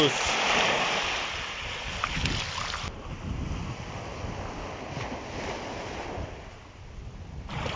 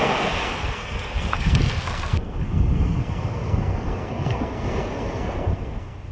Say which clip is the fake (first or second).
second